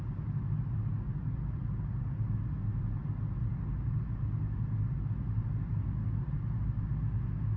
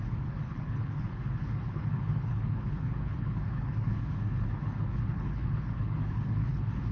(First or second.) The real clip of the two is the first